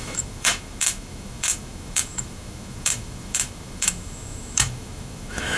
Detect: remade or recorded remade